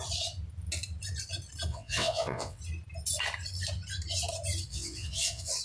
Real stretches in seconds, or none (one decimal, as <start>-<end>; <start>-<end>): 0.0-1.7; 2.6-4.7